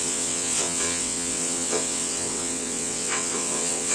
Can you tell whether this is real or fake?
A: fake